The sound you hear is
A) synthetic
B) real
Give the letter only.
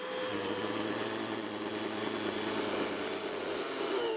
B